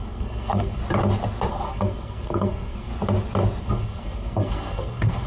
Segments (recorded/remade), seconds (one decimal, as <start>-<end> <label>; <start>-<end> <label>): 0.0-0.8 remade; 0.8-1.5 recorded; 1.5-2.9 remade; 2.9-3.6 recorded; 3.6-5.3 remade